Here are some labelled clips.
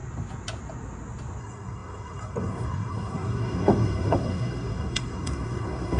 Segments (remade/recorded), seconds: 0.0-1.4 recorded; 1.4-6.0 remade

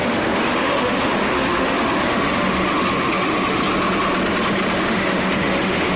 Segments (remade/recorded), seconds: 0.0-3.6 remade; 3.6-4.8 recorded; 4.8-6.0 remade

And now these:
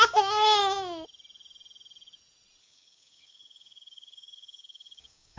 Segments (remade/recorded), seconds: 0.0-0.6 remade; 0.6-2.6 recorded; 2.6-5.4 remade

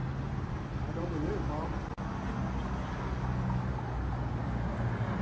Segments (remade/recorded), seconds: 0.0-0.5 remade; 0.5-5.2 recorded

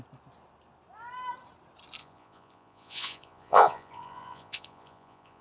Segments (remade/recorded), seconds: 0.0-2.0 recorded; 2.0-5.4 remade

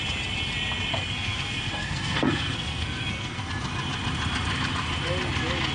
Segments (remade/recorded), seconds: 0.0-0.9 recorded; 0.9-3.5 remade; 3.5-5.7 recorded